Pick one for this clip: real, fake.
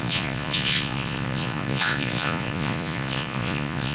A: fake